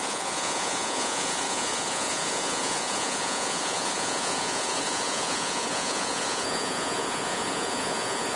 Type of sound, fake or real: fake